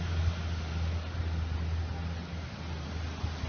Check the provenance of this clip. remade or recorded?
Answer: recorded